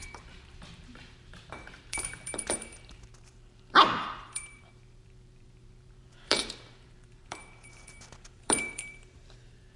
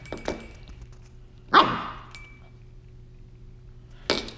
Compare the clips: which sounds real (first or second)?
second